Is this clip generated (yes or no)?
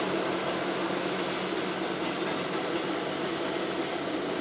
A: no